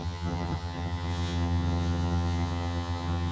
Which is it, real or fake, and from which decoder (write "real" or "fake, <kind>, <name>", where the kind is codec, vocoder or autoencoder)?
fake, vocoder, HiFi-GAN